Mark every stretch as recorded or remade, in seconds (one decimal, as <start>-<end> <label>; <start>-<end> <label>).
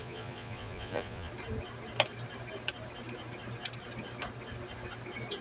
0.0-1.3 remade; 1.3-5.4 recorded